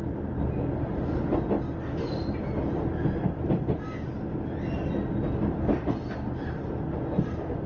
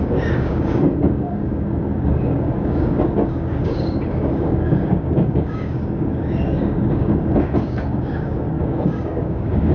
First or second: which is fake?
second